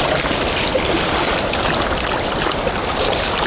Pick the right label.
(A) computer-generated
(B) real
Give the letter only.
B